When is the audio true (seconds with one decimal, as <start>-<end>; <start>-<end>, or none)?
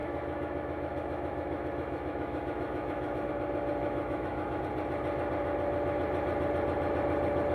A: 3.3-3.8; 4.6-7.5